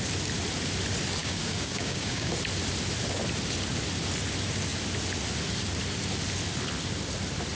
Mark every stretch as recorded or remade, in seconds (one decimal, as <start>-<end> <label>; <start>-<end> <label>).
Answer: 0.0-1.2 recorded; 1.2-2.3 remade; 2.3-7.5 recorded